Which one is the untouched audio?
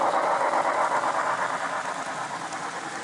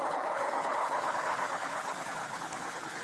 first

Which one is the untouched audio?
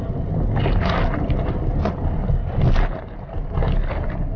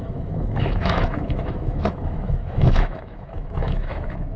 first